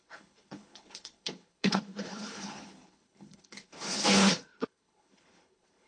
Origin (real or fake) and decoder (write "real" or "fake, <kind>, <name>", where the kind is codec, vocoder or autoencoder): fake, codec, HILCodec